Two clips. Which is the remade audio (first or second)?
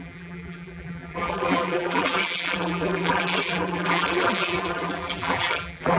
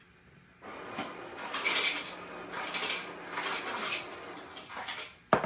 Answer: first